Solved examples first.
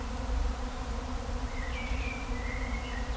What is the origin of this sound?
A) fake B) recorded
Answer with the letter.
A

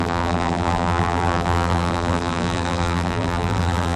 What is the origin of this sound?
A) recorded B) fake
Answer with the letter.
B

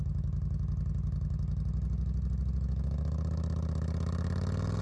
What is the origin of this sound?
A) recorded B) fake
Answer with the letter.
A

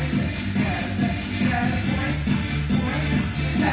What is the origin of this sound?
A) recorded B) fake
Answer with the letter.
A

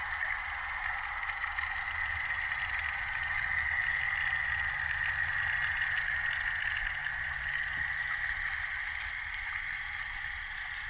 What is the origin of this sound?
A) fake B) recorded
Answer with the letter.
B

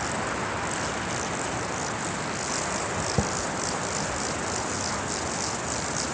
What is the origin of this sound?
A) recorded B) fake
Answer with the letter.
A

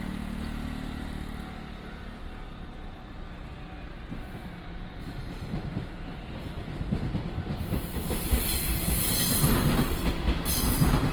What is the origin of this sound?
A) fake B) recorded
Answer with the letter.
B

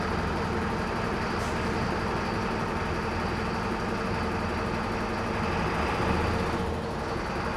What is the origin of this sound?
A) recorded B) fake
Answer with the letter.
A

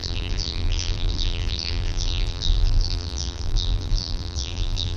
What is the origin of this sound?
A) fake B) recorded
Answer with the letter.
A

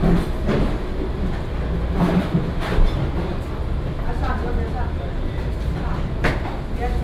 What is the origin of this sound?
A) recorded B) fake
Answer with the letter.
A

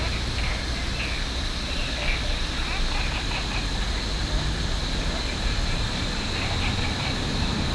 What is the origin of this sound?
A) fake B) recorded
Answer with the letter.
B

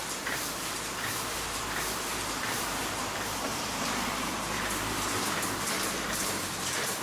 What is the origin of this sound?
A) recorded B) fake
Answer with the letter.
B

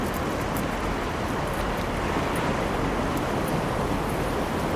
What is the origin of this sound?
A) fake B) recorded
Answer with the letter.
B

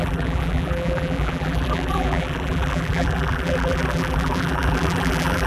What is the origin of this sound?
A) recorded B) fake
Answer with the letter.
B